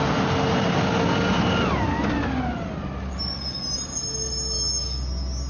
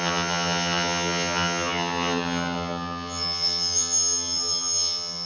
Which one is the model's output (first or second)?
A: second